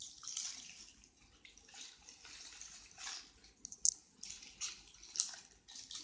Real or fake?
real